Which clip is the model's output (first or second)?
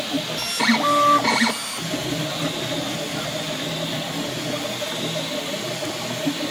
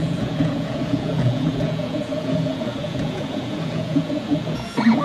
second